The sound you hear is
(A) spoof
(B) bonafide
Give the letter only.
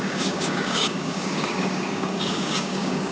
A